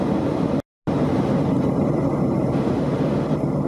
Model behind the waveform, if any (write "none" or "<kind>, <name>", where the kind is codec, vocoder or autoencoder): none